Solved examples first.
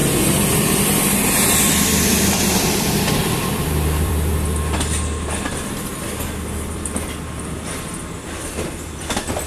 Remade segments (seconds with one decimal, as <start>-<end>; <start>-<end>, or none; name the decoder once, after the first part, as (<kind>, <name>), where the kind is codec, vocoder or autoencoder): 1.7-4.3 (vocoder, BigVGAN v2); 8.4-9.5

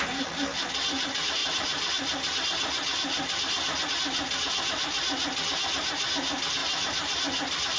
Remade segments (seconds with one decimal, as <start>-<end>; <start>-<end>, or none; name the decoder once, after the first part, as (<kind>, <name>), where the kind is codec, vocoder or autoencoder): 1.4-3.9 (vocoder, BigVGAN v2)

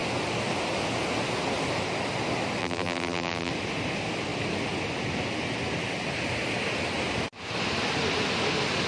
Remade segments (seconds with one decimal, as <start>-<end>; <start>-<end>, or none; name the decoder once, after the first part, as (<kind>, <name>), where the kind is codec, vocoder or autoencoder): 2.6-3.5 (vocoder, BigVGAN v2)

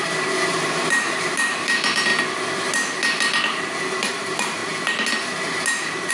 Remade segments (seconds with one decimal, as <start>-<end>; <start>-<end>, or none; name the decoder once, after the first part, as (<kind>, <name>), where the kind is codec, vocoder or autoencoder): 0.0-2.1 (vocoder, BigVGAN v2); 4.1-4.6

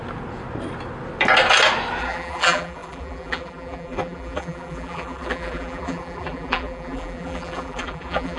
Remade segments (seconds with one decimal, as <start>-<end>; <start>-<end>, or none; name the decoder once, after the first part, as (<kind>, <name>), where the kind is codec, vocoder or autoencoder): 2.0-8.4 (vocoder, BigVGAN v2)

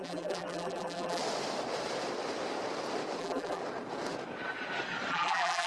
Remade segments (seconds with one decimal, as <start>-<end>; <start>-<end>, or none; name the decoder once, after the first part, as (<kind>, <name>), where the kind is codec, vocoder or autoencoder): 0.0-1.2 (vocoder, BigVGAN v2); 3.2-3.6; 5.1-5.7

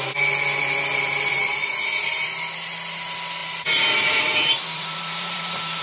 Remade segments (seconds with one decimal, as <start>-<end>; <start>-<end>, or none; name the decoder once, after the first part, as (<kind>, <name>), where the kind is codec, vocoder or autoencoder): 1.3-2.3 (vocoder, BigVGAN v2); 3.4-5.8

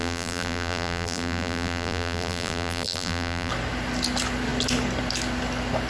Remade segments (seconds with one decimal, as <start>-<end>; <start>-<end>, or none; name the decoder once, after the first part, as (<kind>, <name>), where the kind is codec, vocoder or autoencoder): 0.0-3.5 (vocoder, BigVGAN v2)